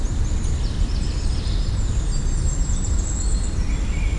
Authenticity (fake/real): real